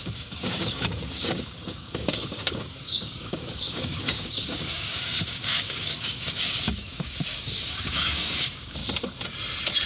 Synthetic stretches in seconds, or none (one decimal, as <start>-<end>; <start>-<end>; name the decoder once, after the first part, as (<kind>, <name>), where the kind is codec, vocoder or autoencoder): 0.0-8.8 (codec, DAC)